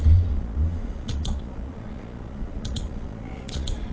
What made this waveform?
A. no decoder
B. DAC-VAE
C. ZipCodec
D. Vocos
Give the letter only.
D